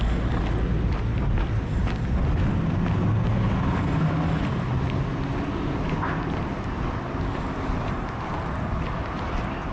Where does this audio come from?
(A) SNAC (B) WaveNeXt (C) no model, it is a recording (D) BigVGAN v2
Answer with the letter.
C